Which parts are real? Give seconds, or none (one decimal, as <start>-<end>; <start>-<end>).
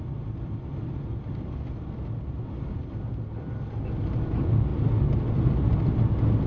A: 0.0-6.5